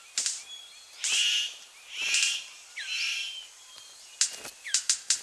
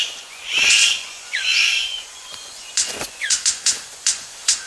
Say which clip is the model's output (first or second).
second